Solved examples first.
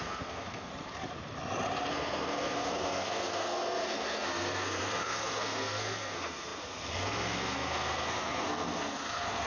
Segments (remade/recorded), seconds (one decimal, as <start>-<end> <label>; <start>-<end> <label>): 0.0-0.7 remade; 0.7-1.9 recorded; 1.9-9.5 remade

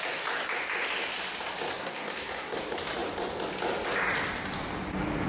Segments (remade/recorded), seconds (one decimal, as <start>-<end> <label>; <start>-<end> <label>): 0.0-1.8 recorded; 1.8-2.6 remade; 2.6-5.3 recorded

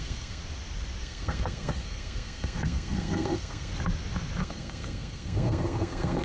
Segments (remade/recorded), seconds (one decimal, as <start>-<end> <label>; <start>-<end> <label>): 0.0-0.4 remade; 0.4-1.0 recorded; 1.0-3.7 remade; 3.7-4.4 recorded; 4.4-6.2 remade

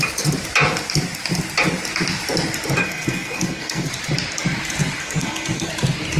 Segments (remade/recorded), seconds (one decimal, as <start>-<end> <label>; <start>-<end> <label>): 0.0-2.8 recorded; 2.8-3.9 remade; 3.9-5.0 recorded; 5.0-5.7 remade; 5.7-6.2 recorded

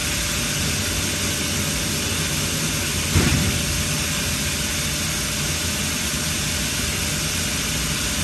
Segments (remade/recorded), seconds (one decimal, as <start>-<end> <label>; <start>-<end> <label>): 0.0-8.2 recorded